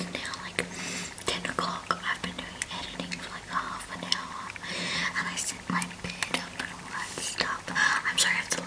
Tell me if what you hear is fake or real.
real